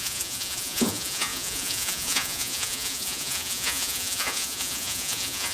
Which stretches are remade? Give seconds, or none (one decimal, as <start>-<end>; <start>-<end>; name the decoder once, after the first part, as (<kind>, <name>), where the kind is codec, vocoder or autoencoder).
0.0-5.5 (vocoder, Vocos)